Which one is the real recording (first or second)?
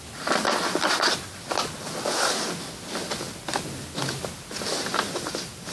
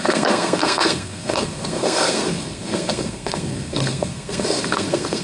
first